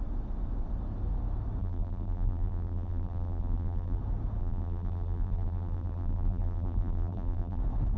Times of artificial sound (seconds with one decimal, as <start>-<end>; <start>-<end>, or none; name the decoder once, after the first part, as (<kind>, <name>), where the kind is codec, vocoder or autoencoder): 1.6-4.0 (vocoder, BigVGAN v2); 4.4-7.6